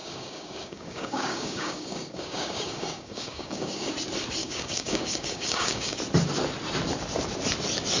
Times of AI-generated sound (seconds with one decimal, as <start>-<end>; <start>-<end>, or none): 0.0-3.9; 4.4-6.0